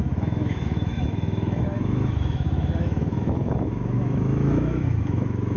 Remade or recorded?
remade